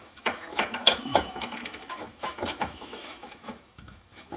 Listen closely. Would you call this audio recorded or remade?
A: remade